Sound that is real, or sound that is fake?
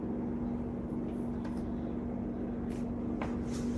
real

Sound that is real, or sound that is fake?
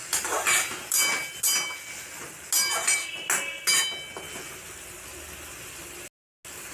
real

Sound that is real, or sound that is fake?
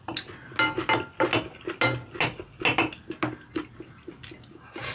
real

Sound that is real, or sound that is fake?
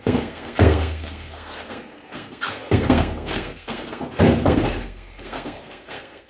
fake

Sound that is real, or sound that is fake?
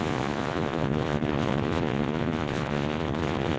fake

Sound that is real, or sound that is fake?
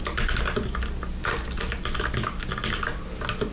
real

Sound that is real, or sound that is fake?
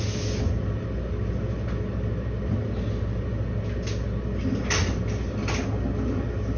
real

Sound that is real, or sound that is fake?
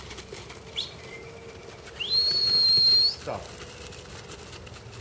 real